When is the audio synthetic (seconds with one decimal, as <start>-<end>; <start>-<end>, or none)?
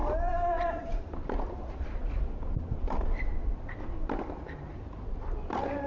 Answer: 0.0-2.0; 5.5-5.9